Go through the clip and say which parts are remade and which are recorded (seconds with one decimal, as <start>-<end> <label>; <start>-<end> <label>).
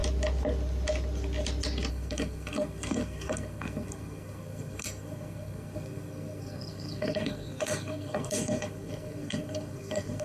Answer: 0.0-1.9 recorded; 1.9-10.2 remade